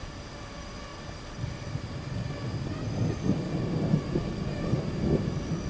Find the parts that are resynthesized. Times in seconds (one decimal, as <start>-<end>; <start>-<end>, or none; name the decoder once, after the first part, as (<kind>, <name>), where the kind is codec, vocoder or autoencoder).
none